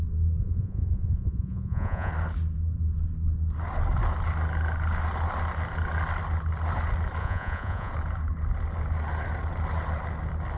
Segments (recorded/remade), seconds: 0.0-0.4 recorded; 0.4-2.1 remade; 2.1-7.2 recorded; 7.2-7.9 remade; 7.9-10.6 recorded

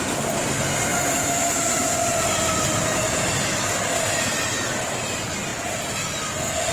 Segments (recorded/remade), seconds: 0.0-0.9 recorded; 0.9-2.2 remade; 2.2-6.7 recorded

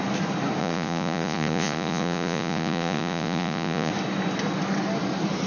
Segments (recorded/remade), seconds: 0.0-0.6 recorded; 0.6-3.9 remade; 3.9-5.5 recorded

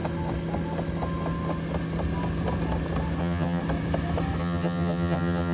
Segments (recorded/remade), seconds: 0.0-3.2 recorded; 3.2-3.6 remade; 3.6-4.4 recorded; 4.4-5.5 remade

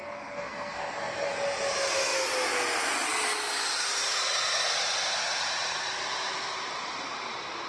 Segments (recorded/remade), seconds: 0.0-1.3 remade; 1.3-7.7 recorded

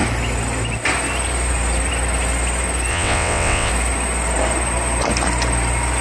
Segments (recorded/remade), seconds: 0.0-2.9 recorded; 2.9-3.7 remade; 3.7-6.0 recorded

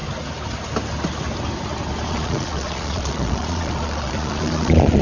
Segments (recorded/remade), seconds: 0.0-2.1 recorded; 2.1-5.0 remade